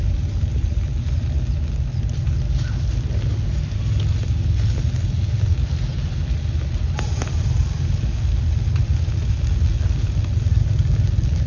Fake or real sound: real